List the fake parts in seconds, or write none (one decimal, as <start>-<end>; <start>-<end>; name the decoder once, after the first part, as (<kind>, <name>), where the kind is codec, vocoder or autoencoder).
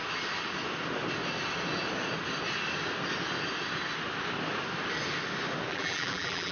5.7-6.5 (vocoder, BigVGAN v2)